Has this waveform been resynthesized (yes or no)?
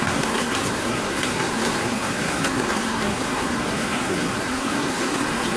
yes